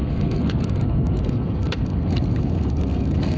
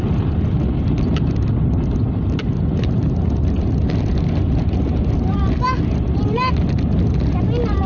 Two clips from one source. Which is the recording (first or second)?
second